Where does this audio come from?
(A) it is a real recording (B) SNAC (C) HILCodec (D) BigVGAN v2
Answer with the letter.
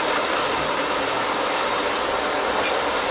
A